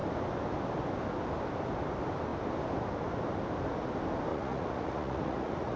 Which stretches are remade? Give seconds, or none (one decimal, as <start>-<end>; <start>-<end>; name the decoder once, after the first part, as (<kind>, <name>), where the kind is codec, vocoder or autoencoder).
4.3-5.8 (vocoder, Vocos)